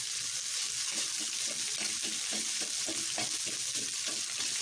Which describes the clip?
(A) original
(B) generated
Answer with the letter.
A